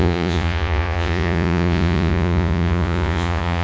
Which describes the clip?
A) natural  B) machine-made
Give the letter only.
B